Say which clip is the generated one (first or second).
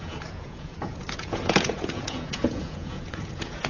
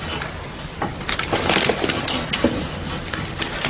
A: first